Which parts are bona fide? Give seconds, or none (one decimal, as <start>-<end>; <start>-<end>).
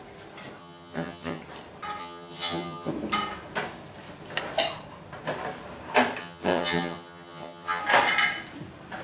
0.0-0.6; 1.4-2.0; 2.9-6.2; 7.8-9.0